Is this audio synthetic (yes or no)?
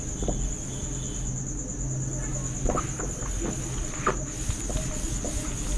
no